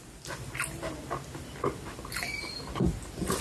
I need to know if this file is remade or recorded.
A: recorded